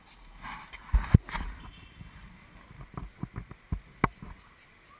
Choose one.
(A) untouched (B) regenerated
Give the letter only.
A